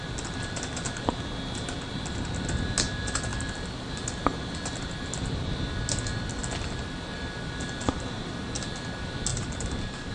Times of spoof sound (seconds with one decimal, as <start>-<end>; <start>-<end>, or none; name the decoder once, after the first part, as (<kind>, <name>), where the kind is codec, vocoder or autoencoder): 3.3-3.9 (vocoder, BigVGAN v2); 6.4-8.4; 9.3-10.1